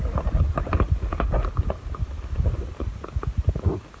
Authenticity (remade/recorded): recorded